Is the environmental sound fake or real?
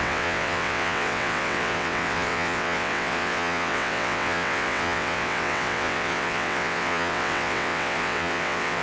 fake